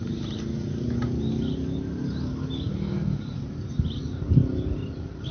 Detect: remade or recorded recorded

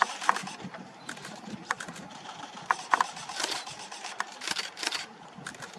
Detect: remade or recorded remade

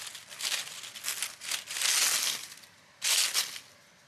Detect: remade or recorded recorded